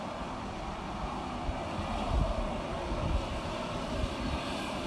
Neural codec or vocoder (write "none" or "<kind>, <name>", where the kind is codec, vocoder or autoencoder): none